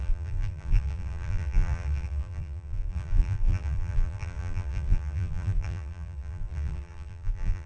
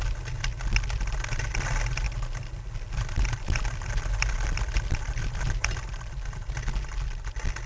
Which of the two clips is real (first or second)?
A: second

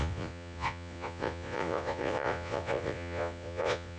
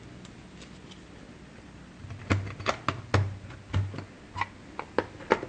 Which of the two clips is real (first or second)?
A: second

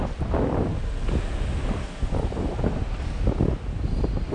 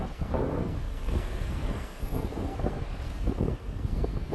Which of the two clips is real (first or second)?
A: first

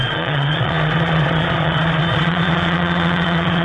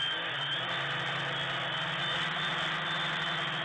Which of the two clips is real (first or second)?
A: second